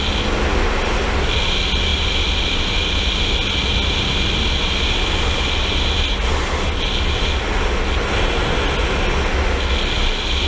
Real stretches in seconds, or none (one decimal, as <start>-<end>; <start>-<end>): 0.0-10.5